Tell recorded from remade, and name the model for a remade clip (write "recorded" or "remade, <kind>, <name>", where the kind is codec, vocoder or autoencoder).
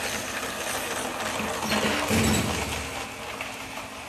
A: recorded